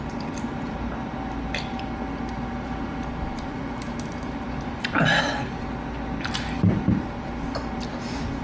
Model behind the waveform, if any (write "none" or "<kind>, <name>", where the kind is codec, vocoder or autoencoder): vocoder, BigVGAN v2